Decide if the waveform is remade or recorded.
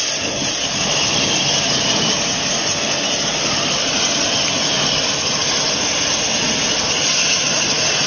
recorded